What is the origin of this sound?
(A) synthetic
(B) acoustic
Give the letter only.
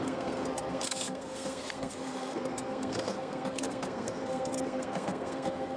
A